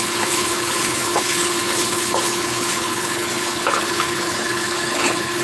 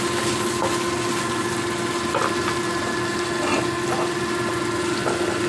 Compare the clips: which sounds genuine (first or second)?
second